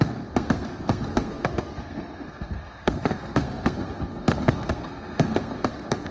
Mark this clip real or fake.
fake